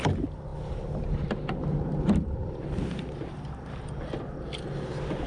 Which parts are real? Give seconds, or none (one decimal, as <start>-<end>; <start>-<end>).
0.0-5.3